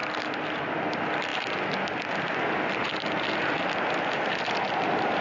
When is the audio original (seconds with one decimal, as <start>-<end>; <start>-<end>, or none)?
0.0-5.2